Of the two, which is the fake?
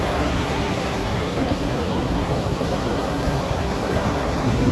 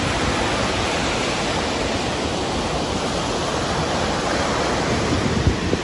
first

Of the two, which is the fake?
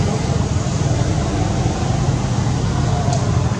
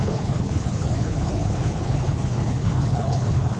second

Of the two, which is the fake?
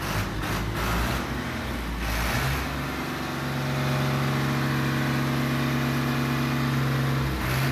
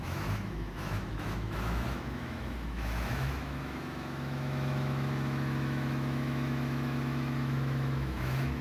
second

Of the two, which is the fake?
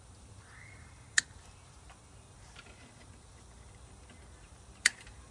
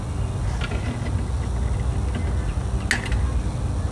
first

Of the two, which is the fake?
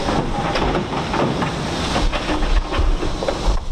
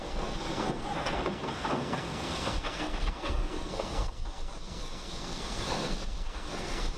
second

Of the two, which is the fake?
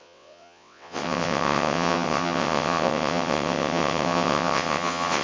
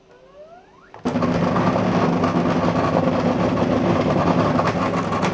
first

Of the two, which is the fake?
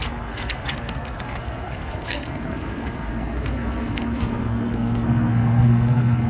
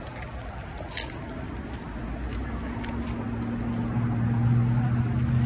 first